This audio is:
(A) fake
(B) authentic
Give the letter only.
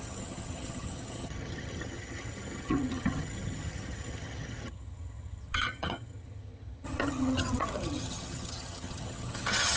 A